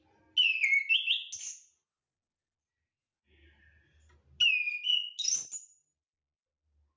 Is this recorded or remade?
recorded